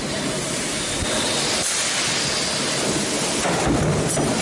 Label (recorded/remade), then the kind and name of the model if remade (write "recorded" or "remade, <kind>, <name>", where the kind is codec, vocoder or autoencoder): recorded